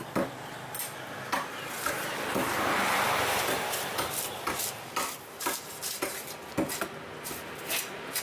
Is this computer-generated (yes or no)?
no